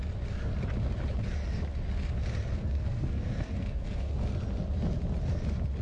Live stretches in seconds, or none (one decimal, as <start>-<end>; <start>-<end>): 0.0-2.5; 4.1-5.8